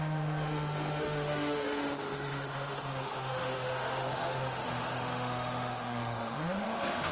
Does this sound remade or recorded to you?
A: remade